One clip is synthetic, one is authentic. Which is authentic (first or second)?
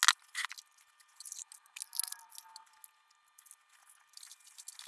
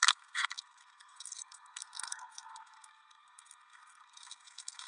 first